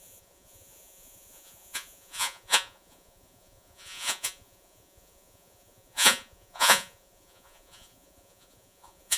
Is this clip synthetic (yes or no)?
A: yes